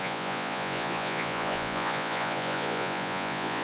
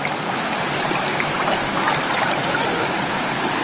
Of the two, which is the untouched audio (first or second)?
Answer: second